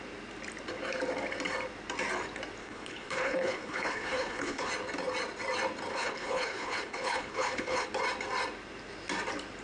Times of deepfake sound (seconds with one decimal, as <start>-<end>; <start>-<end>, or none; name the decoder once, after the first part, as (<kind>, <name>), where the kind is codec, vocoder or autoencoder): 2.6-4.7 (codec, HILCodec); 5.9-7.9